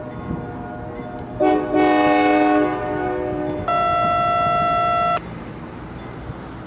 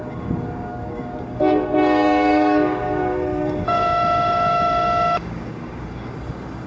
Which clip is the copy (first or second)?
second